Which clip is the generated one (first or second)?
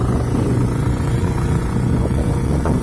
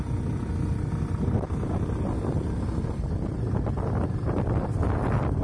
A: first